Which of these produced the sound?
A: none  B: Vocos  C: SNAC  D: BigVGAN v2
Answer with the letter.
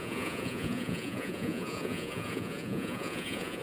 B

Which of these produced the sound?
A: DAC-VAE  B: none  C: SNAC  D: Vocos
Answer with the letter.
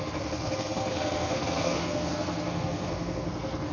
C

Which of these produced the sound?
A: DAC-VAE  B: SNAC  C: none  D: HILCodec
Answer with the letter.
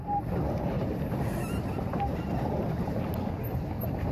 C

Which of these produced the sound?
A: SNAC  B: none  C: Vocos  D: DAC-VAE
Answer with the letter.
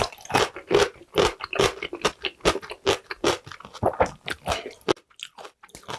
B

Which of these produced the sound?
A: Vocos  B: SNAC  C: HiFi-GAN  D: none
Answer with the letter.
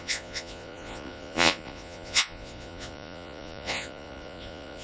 A